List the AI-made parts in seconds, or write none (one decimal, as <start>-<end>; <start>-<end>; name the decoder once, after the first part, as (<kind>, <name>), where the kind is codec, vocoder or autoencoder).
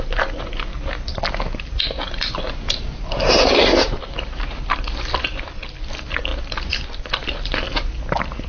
none